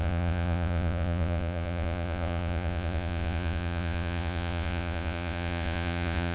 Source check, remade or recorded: remade